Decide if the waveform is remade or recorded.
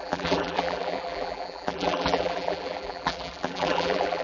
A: remade